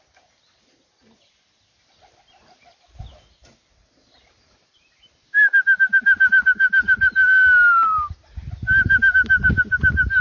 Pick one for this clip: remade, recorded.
recorded